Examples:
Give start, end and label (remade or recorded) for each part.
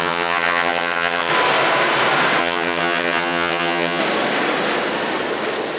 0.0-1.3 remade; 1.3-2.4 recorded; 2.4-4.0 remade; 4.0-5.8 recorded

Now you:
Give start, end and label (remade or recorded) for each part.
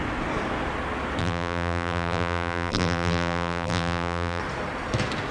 0.0-1.2 recorded; 1.2-4.4 remade; 4.4-5.3 recorded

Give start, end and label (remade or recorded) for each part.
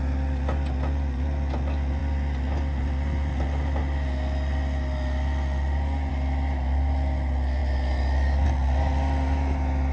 0.0-9.9 recorded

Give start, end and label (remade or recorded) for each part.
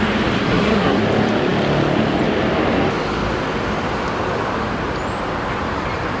0.0-0.4 recorded; 0.4-1.0 remade; 1.0-6.2 recorded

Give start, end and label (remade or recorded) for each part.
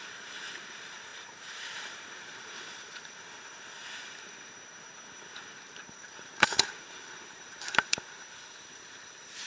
0.0-9.5 remade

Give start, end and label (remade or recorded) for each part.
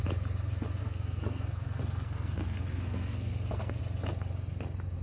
0.0-0.8 recorded; 0.8-3.8 remade; 3.8-5.0 recorded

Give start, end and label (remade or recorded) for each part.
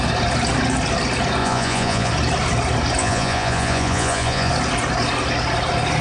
0.0-1.4 recorded; 1.4-2.1 remade; 2.1-3.0 recorded; 3.0-4.5 remade; 4.5-6.0 recorded